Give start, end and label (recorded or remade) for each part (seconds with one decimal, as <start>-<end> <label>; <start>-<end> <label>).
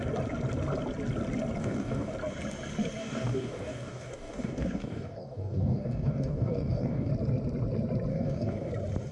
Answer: 0.0-1.6 recorded; 1.6-2.1 remade; 2.1-3.0 recorded; 3.0-7.1 remade; 7.1-8.1 recorded; 8.1-8.7 remade; 8.7-9.1 recorded